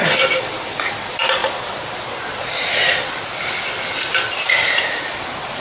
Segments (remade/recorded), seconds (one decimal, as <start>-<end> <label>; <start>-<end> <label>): 0.0-5.6 recorded